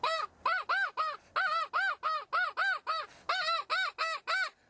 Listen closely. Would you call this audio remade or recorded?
recorded